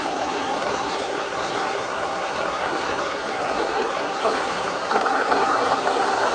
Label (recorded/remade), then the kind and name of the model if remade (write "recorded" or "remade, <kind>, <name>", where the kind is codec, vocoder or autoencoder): remade, codec, SNAC